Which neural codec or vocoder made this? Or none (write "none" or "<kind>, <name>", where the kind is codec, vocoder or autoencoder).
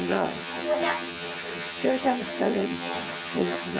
vocoder, HiFi-GAN